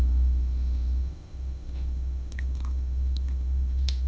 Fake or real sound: fake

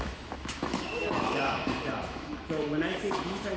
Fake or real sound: fake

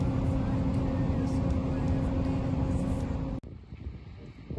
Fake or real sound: real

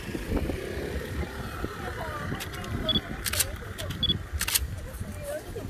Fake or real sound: real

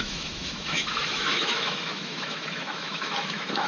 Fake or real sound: fake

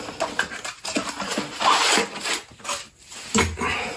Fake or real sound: real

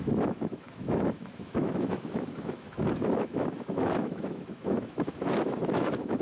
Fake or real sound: fake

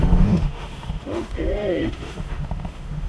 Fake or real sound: fake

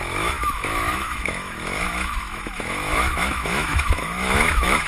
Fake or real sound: fake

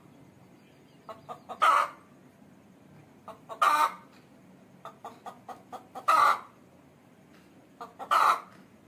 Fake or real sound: real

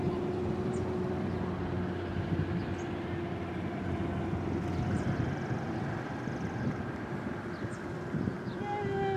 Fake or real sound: real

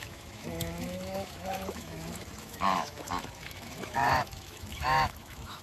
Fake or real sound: fake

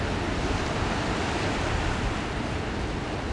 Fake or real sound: real